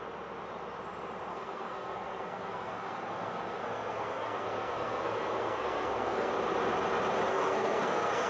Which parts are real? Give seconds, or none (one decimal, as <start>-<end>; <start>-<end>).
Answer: 0.0-1.3; 6.3-7.3